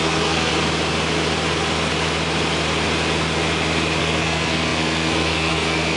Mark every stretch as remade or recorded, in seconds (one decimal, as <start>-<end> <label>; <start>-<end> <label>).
0.0-0.5 remade; 0.5-4.0 recorded; 4.0-6.0 remade